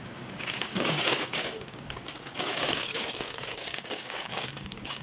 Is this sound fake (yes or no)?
yes